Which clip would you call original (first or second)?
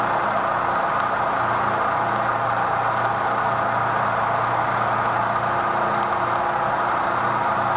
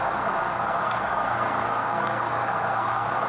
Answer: first